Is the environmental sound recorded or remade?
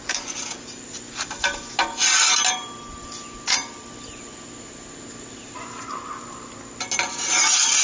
recorded